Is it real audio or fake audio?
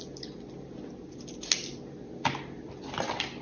real